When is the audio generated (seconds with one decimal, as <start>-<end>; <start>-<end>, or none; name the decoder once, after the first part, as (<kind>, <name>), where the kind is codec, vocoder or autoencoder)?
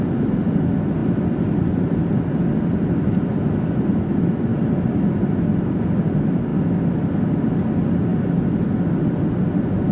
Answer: none